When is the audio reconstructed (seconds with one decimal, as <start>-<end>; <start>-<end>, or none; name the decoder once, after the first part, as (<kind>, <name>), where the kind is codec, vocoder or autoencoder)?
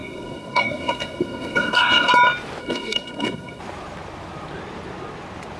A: 0.0-2.1 (codec, SNAC); 2.6-3.6